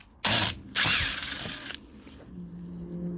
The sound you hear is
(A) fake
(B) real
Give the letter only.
B